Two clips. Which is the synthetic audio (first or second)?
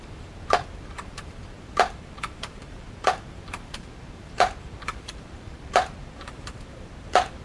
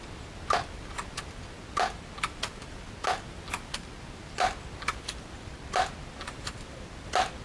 first